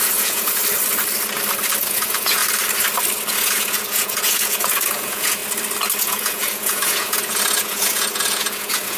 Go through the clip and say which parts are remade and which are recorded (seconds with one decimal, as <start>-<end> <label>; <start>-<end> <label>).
0.0-0.6 remade; 0.6-1.8 recorded; 1.8-2.4 remade; 2.4-3.3 recorded; 3.3-5.4 remade; 5.4-6.0 recorded; 6.0-9.0 remade